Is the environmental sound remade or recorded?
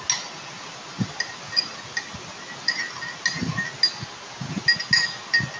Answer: recorded